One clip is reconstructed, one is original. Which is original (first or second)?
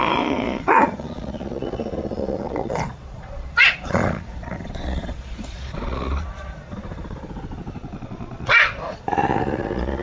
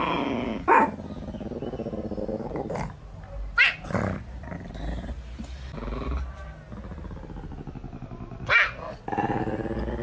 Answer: second